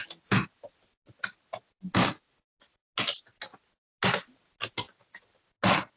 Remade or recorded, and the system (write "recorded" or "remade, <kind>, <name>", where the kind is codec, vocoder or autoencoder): recorded